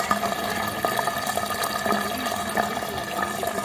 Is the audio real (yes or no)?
yes